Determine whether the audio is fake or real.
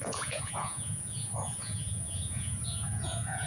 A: fake